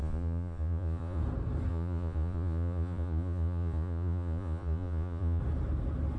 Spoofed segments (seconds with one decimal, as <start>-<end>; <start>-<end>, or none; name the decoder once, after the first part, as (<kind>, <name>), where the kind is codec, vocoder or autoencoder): 0.0-1.2 (vocoder, Vocos); 1.7-5.4